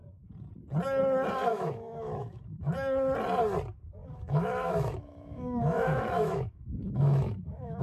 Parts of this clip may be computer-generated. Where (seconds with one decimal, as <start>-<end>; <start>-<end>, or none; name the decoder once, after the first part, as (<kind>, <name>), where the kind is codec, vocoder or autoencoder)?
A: 1.5-2.7 (autoencoder, DAC-VAE); 4.0-7.8